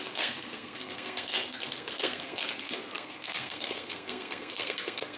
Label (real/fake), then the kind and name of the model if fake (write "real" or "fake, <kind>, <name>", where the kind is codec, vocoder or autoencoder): fake, codec, SNAC